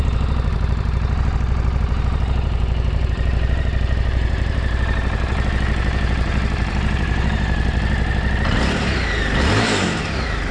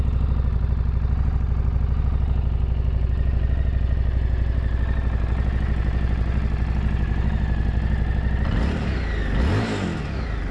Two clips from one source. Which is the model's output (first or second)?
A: first